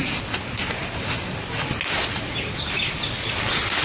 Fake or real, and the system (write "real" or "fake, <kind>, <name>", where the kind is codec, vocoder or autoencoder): real